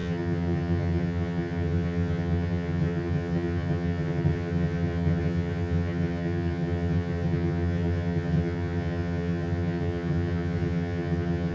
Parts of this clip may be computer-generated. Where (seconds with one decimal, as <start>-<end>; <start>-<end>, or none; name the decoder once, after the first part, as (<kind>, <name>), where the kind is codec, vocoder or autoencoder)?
0.0-11.5 (vocoder, HiFi-GAN)

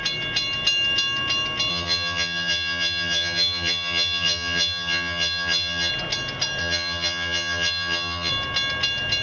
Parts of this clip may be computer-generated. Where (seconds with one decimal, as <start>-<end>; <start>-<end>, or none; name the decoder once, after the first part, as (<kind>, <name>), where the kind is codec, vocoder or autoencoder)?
1.7-5.9 (vocoder, HiFi-GAN); 6.6-8.3

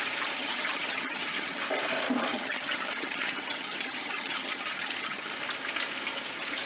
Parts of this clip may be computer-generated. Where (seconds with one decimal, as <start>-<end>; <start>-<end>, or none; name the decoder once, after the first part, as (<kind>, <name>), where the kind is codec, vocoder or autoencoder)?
0.4-1.6 (vocoder, HiFi-GAN); 2.3-5.3

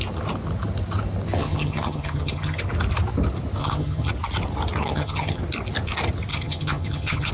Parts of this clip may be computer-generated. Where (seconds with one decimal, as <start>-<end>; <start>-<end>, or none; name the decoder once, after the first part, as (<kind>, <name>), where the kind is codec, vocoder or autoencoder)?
1.4-2.6 (vocoder, HiFi-GAN); 3.6-4.1; 4.8-5.4; 6.3-7.3

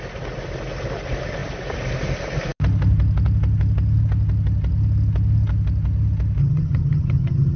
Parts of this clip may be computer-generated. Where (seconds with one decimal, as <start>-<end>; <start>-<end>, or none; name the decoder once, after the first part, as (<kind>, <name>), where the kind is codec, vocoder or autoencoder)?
6.4-7.6 (vocoder, HiFi-GAN)

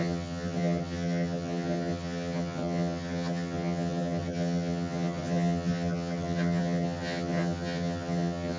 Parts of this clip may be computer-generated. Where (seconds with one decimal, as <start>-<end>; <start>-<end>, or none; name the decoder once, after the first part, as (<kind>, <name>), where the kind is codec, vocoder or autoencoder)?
0.0-8.6 (vocoder, HiFi-GAN)

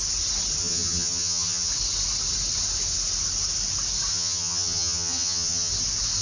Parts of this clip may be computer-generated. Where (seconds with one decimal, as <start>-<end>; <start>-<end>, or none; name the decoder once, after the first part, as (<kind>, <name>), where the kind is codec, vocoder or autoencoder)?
0.6-1.7 (vocoder, HiFi-GAN); 4.1-5.7